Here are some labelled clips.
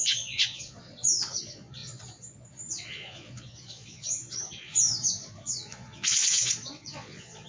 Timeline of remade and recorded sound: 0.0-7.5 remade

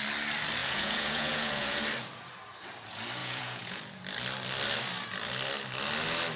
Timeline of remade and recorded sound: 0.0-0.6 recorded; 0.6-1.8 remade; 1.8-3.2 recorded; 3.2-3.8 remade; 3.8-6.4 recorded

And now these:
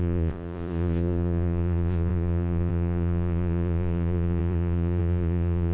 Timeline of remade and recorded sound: 0.0-5.7 remade

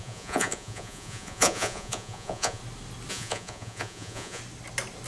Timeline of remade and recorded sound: 0.0-2.6 remade; 2.6-3.1 recorded; 3.1-4.4 remade; 4.4-5.1 recorded

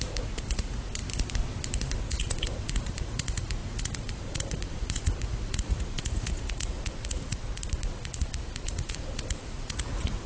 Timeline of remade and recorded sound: 0.0-1.0 remade; 1.0-2.0 recorded; 2.0-7.4 remade; 7.4-8.0 recorded; 8.0-10.3 remade

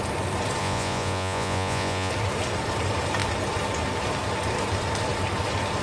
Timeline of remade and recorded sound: 0.0-0.6 recorded; 0.6-2.1 remade; 2.1-5.8 recorded

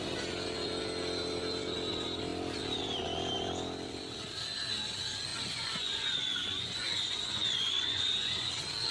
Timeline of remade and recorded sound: 0.0-5.3 recorded; 5.3-8.5 remade; 8.5-8.9 recorded